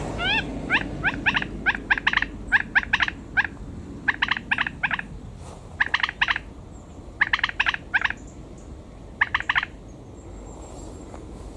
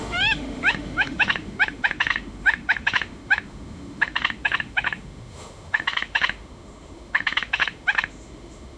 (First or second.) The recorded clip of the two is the first